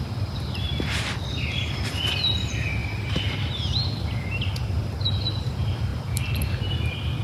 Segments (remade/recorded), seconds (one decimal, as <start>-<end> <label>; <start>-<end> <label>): 0.0-0.7 remade; 0.7-1.2 recorded; 1.2-2.8 remade; 2.8-5.4 recorded; 5.4-7.2 remade